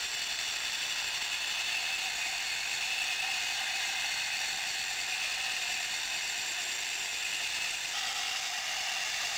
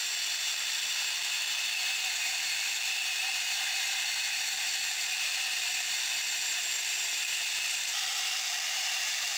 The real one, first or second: first